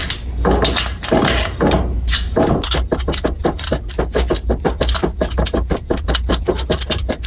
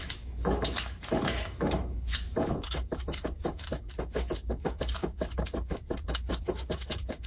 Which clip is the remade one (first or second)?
second